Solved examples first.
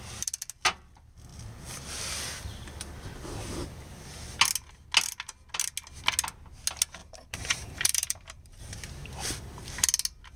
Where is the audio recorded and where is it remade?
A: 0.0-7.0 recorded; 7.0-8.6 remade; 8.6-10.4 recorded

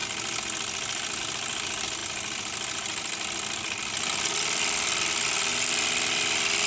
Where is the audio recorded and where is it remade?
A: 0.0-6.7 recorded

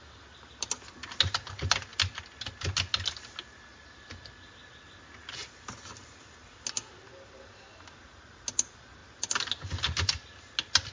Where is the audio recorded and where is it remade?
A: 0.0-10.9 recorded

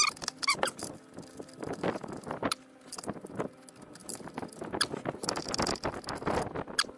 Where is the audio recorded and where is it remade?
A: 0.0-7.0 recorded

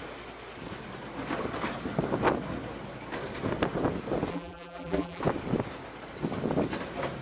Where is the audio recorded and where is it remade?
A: 0.0-4.3 recorded; 4.3-5.2 remade; 5.2-7.2 recorded